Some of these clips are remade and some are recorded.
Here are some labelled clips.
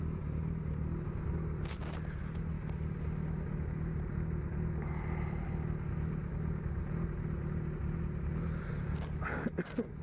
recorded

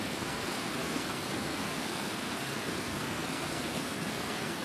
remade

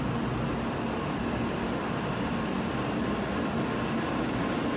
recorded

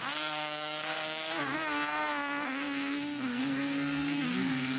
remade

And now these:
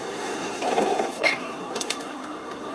remade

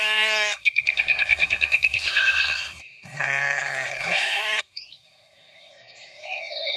remade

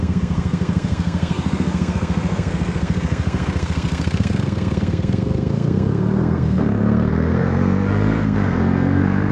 remade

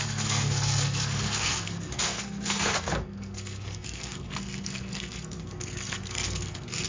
remade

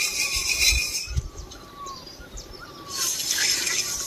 recorded